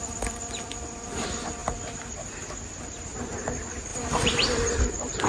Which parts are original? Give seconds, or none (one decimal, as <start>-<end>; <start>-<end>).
0.0-3.9; 4.8-5.3